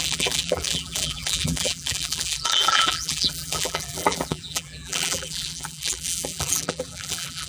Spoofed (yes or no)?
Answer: yes